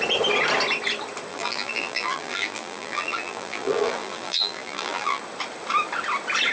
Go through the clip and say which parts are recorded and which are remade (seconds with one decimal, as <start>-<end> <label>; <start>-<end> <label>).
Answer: 0.0-1.3 recorded; 1.3-5.2 remade; 5.2-6.5 recorded